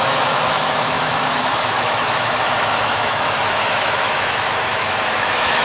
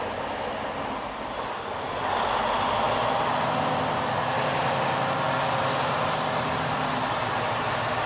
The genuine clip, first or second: second